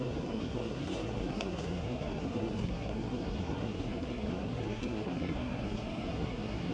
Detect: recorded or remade remade